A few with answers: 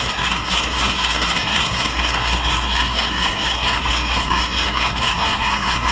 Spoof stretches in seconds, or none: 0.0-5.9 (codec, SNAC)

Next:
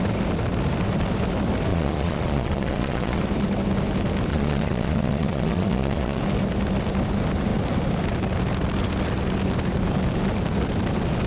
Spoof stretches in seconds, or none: 1.7-3.2 (vocoder, Vocos); 4.3-6.2

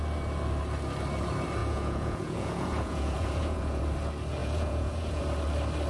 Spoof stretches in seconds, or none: 1.6-3.8 (vocoder, Vocos); 4.4-5.2

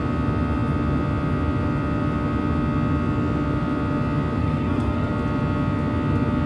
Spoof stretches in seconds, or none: 4.4-5.1 (codec, SNAC)

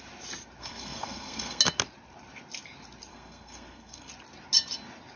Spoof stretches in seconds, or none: 0.6-1.6 (codec, SNAC); 3.1-4.1

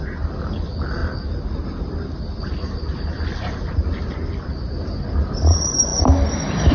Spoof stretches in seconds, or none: none

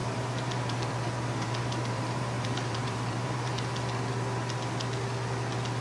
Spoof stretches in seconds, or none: 0.0-3.5 (vocoder, BigVGAN v2)

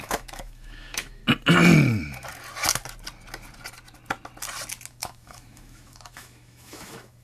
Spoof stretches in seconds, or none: 0.0-1.2 (autoencoder, DAC-VAE); 4.9-7.2